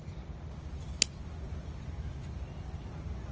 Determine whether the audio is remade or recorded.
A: recorded